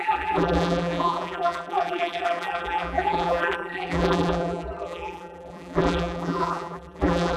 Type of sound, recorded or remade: remade